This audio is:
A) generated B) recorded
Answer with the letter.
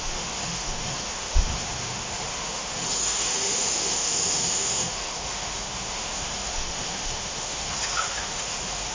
A